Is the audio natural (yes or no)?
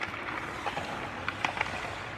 yes